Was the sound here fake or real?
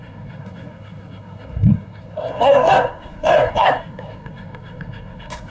fake